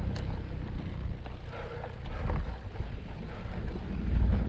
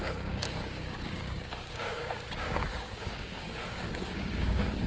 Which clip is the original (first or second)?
first